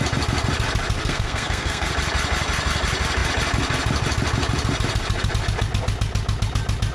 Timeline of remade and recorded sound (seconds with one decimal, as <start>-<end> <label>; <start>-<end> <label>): 0.0-1.0 recorded; 1.0-1.9 remade; 1.9-6.9 recorded